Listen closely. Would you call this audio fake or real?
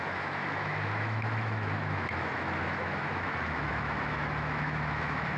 fake